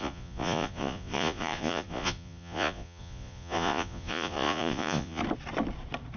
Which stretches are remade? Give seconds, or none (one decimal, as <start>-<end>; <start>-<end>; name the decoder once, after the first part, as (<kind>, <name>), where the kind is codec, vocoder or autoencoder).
0.0-5.2 (vocoder, Vocos)